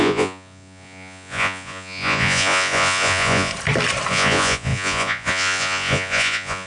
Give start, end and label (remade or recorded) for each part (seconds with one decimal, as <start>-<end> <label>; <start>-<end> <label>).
0.0-3.5 remade; 3.5-4.1 recorded; 4.1-6.7 remade